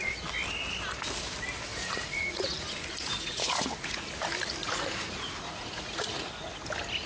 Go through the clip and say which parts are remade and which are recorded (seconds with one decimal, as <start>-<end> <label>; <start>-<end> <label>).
0.0-1.7 recorded; 1.7-4.1 remade; 4.1-4.6 recorded; 4.6-6.3 remade; 6.3-7.1 recorded